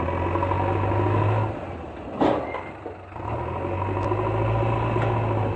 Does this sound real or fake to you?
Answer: real